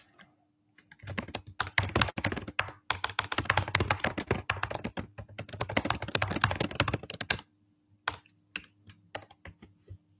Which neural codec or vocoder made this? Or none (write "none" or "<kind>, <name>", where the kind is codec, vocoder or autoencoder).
none